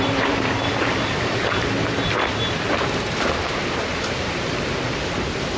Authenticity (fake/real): fake